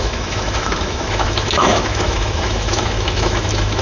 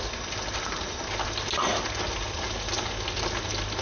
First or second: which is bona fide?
second